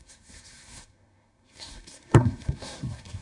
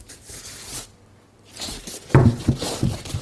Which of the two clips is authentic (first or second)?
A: second